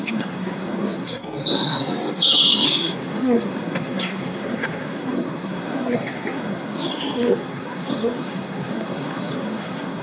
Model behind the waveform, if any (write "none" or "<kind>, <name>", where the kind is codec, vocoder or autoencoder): codec, SNAC